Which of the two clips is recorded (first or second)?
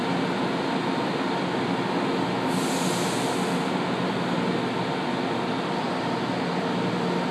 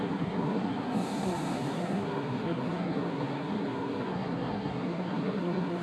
first